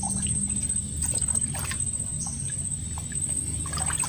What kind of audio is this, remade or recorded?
recorded